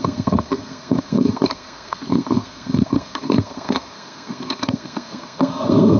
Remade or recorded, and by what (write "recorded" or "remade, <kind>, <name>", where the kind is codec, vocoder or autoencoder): remade, codec, SNAC